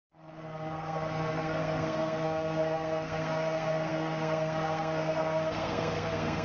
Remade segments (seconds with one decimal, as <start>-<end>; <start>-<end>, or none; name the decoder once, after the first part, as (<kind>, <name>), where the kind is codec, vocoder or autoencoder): 0.0-6.4 (codec, SNAC)